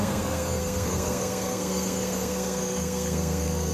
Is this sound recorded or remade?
remade